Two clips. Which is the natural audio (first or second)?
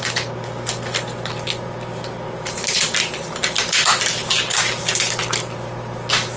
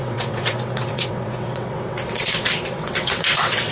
first